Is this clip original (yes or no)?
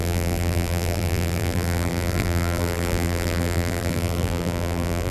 no